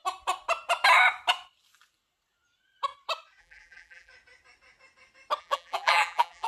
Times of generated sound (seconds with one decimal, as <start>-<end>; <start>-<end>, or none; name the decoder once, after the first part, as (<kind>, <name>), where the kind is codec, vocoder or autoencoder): 3.4-4.1 (vocoder, BigVGAN v2); 5.4-6.5